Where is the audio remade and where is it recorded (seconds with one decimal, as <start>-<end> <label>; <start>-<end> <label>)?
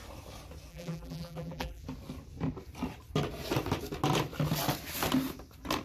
0.0-0.7 recorded; 0.7-1.8 remade; 1.8-5.8 recorded